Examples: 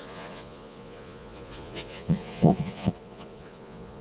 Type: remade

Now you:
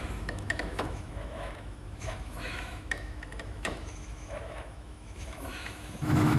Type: remade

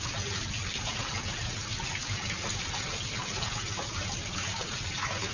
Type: recorded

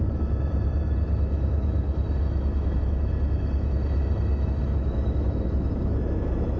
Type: remade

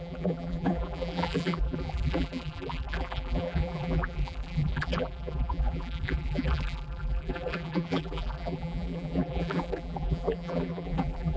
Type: remade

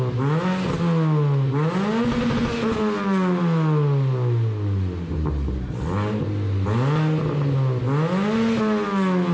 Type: recorded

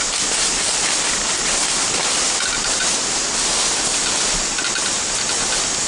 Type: recorded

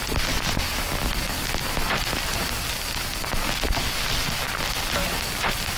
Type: recorded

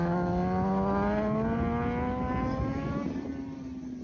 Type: recorded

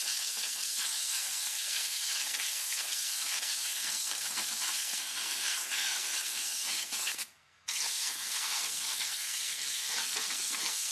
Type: remade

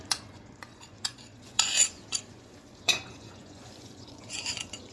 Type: remade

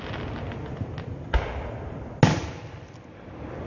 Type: recorded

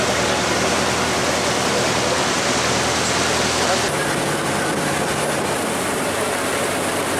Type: recorded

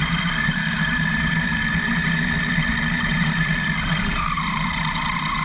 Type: remade